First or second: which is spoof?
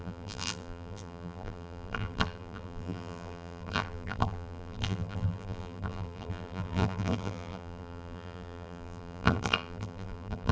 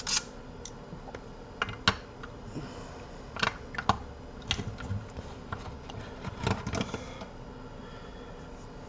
first